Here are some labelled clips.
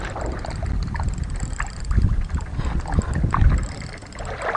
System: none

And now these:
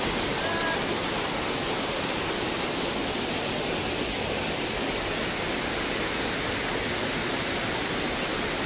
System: none